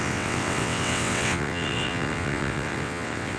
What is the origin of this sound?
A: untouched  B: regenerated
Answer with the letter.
B